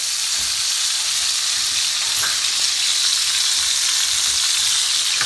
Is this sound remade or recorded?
recorded